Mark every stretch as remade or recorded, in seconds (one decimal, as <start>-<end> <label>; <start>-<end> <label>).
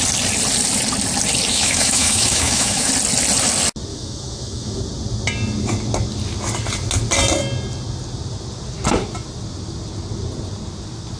0.0-1.5 recorded; 1.5-2.9 remade; 2.9-3.9 recorded; 3.9-4.8 remade; 4.8-11.2 recorded